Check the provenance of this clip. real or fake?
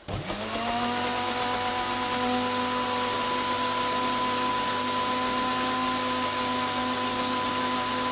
real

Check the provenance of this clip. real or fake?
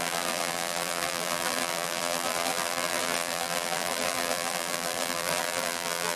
fake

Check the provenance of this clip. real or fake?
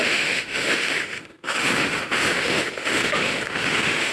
fake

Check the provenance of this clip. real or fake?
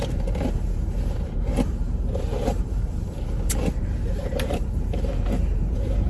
fake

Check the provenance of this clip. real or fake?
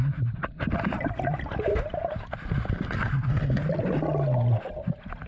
real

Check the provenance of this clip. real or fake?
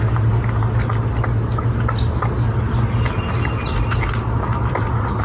real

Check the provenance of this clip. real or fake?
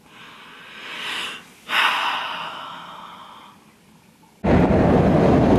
real